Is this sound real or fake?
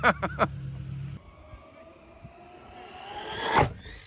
real